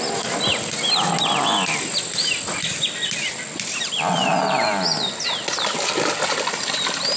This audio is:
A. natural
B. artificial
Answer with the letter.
A